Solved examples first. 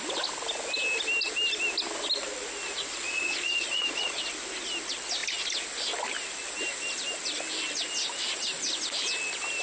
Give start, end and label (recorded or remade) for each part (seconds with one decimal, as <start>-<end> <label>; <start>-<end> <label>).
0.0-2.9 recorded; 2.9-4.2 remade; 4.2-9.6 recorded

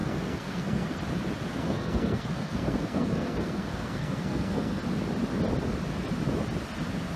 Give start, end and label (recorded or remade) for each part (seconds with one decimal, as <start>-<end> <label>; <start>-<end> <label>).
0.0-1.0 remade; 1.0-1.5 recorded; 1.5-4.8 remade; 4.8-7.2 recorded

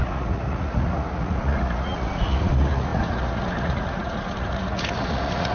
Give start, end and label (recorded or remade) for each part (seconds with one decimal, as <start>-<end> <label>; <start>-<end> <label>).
0.0-5.5 remade

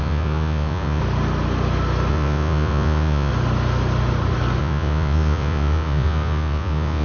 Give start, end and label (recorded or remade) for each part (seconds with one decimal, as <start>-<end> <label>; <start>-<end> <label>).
0.0-1.0 remade; 1.0-2.1 recorded; 2.1-3.3 remade; 3.3-4.6 recorded; 4.6-7.0 remade

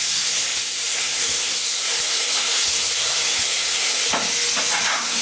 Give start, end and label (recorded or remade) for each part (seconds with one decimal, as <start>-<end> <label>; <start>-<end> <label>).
0.0-4.1 remade; 4.1-4.8 recorded; 4.8-5.2 remade

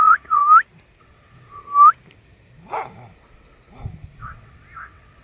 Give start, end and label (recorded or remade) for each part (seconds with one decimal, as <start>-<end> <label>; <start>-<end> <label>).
0.0-0.4 remade; 0.4-1.0 recorded; 1.0-1.6 remade; 1.6-4.2 recorded; 4.2-5.2 remade